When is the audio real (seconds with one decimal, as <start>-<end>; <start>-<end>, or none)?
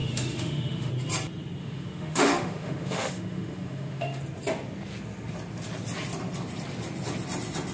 0.9-1.6; 4.2-7.7